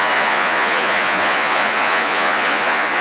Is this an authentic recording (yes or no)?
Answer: no